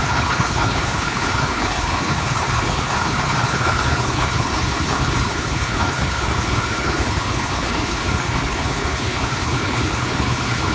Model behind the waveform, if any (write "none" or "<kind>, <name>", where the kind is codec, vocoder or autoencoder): codec, HILCodec